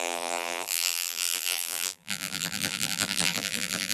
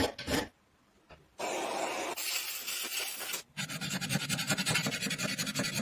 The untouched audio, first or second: second